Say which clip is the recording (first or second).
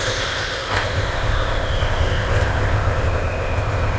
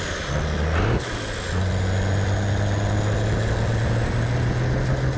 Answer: second